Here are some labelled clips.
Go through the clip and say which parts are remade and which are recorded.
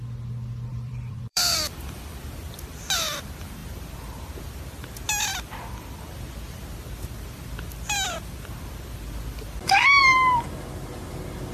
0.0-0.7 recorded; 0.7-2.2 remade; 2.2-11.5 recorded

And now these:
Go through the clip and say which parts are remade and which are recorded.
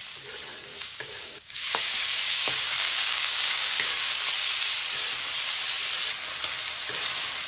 0.0-0.7 recorded; 0.7-4.2 remade; 4.2-7.5 recorded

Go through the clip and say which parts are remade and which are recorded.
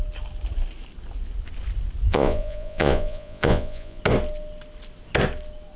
0.0-2.1 recorded; 2.1-4.0 remade; 4.0-5.8 recorded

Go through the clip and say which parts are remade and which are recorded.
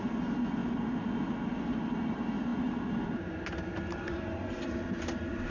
0.0-5.5 recorded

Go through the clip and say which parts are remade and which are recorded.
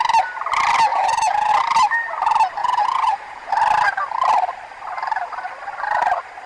0.0-0.9 recorded; 0.9-1.5 remade; 1.5-2.6 recorded; 2.6-3.5 remade; 3.5-6.5 recorded